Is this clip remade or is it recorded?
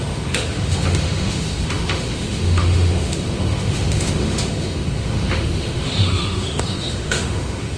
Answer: remade